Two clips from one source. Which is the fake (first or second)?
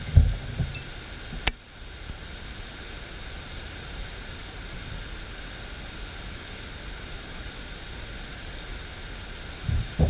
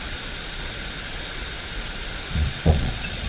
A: second